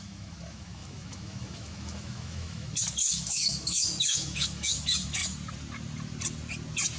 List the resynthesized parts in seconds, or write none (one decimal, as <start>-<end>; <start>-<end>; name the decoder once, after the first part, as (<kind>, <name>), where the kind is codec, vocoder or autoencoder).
0.0-5.2 (autoencoder, DAC-VAE)